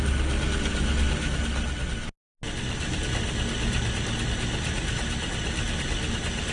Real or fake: real